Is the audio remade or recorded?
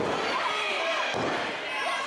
recorded